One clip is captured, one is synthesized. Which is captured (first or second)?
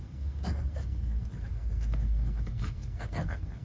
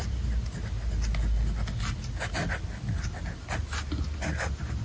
second